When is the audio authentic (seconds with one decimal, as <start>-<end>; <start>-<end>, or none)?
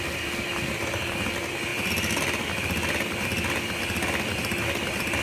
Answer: 0.0-5.2